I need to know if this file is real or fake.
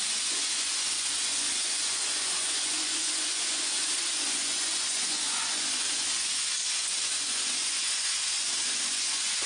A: fake